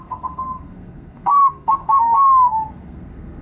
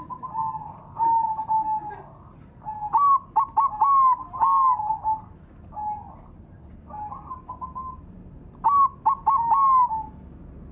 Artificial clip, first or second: first